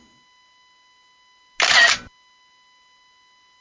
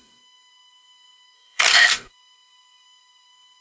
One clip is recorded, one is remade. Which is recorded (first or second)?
first